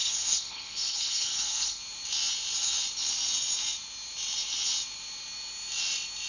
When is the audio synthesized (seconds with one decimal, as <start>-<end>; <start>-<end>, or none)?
0.0-1.8

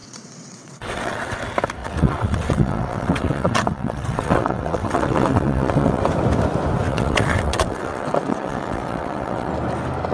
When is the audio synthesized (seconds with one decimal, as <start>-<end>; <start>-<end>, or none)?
0.0-1.4; 1.8-6.0; 6.9-9.5